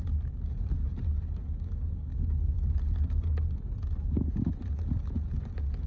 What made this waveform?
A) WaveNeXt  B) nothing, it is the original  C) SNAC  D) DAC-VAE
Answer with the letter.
B